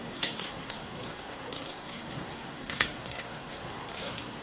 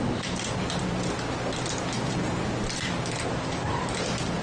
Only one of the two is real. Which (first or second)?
second